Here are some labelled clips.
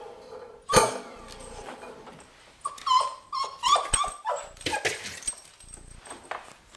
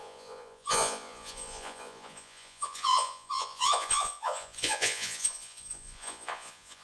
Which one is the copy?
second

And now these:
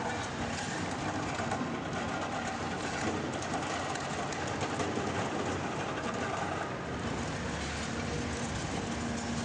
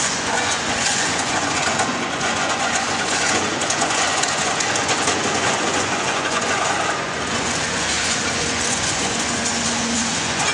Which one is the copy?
second